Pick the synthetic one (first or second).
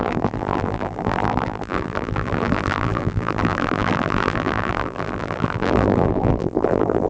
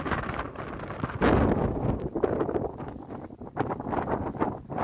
first